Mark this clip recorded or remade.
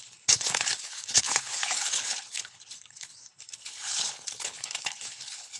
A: remade